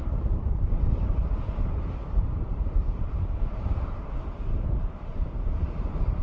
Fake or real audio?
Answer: fake